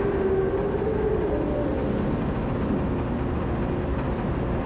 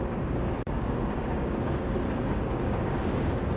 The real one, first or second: first